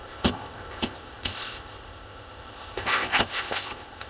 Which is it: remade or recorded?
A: remade